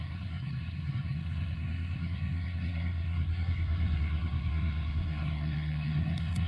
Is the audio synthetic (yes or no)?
yes